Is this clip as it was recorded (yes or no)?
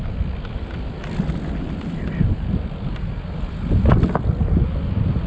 yes